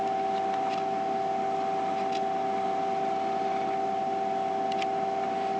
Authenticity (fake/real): real